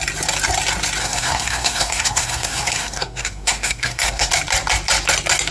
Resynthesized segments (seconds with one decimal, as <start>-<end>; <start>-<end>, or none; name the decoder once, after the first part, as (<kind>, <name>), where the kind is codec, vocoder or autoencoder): 1.0-4.3 (codec, SNAC)